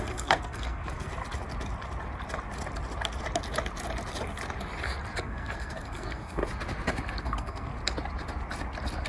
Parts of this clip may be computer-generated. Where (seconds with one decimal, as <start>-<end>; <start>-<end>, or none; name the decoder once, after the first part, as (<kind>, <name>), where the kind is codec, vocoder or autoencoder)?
0.0-1.1 (codec, SNAC); 5.2-6.4; 7.2-7.7